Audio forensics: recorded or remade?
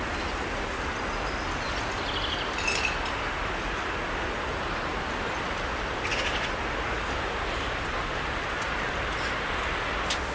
recorded